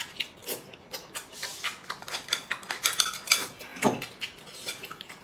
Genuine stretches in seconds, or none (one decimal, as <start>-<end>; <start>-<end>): 0.0-5.2

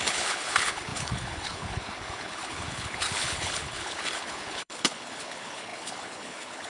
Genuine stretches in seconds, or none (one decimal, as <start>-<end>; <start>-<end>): none

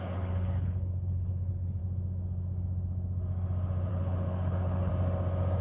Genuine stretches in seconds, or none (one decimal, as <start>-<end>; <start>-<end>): 1.8-3.9; 4.9-5.6

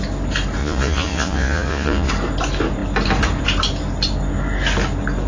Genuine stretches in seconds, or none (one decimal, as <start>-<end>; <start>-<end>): 0.0-0.6; 2.1-5.3

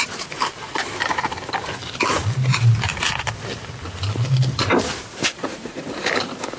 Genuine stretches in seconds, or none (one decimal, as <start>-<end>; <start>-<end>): 0.0-5.2; 6.1-6.6

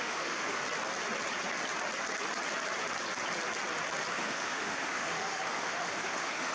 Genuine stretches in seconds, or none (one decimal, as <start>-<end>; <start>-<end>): 0.6-4.1